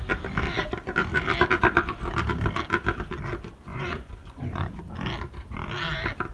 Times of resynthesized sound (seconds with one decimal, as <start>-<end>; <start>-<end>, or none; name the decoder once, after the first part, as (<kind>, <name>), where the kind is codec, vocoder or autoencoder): 3.7-4.8 (vocoder, Vocos)